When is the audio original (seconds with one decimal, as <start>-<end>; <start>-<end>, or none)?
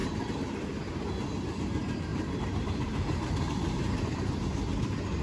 0.0-2.1; 4.4-5.2